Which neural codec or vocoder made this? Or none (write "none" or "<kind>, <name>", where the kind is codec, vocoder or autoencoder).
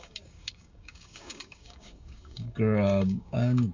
codec, DAC